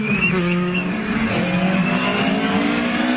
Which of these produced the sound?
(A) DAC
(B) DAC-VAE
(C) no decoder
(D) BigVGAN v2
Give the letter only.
A